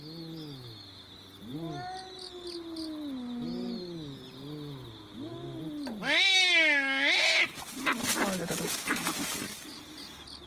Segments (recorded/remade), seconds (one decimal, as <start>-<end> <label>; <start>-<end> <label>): 0.0-10.5 recorded